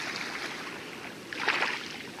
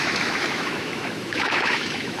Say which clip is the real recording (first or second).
first